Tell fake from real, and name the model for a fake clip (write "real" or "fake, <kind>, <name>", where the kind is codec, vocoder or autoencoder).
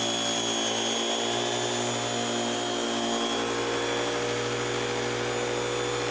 real